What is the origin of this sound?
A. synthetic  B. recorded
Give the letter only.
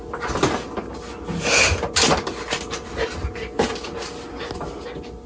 B